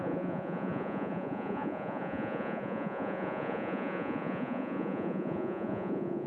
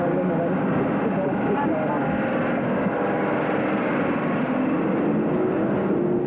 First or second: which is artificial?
first